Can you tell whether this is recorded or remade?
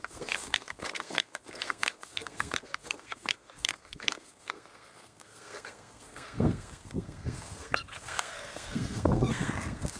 remade